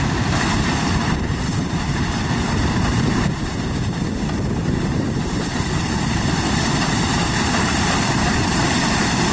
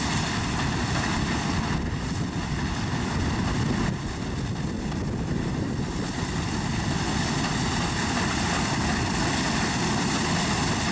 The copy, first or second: first